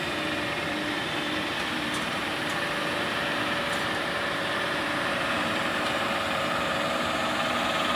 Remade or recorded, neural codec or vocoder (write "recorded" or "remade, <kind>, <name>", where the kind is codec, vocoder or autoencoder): remade, vocoder, BigVGAN v2